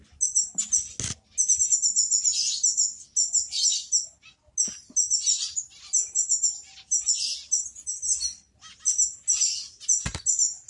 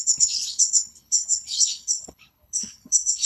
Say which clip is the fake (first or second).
second